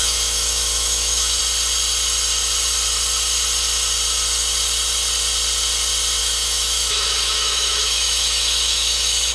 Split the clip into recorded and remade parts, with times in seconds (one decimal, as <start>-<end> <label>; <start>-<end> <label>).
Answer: 0.0-1.4 remade; 1.4-6.2 recorded; 6.2-9.3 remade